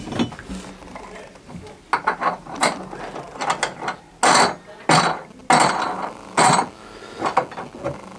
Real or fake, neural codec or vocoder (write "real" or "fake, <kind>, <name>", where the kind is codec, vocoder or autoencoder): real